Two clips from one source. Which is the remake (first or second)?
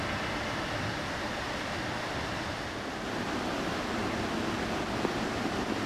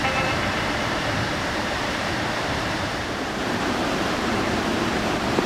second